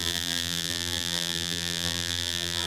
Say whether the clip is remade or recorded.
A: remade